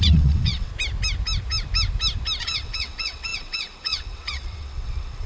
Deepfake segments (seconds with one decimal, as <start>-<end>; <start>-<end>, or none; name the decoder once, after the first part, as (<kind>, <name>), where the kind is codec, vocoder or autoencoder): 0.0-0.7 (vocoder, WaveNeXt); 2.4-5.3